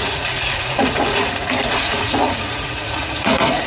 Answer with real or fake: fake